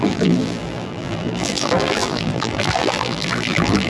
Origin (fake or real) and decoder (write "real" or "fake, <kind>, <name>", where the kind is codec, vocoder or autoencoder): fake, vocoder, BigVGAN v2